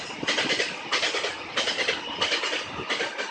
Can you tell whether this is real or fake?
real